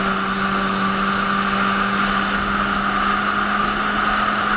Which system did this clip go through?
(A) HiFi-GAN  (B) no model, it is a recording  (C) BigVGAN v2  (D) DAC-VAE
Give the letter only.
B